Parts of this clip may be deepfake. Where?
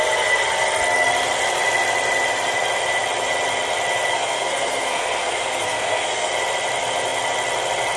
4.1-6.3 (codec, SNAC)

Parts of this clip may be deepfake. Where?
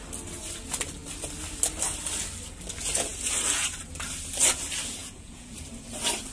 5.0-5.5 (vocoder, Vocos)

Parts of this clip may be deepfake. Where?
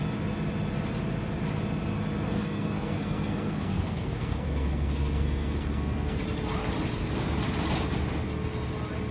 2.3-6.2 (codec, SNAC)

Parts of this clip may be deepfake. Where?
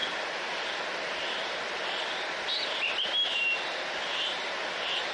none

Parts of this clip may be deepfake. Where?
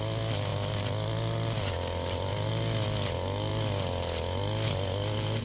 none